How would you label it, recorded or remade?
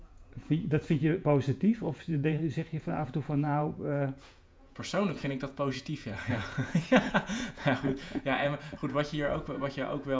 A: remade